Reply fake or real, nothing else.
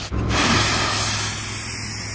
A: real